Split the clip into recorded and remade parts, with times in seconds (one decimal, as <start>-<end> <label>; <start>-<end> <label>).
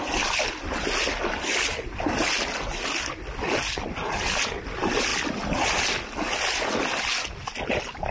0.0-8.1 recorded